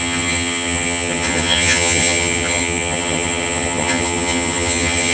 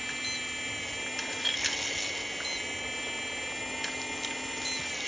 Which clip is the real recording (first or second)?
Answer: second